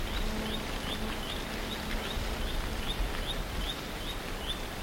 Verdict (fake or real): real